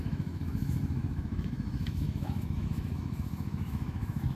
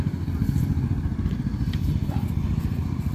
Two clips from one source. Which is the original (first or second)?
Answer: second